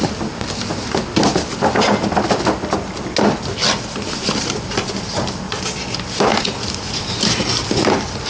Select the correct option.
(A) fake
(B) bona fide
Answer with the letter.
B